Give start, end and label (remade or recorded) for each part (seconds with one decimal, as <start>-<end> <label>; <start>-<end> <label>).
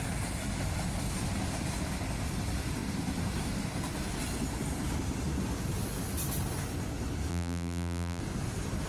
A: 0.0-7.3 recorded; 7.3-8.2 remade; 8.2-8.9 recorded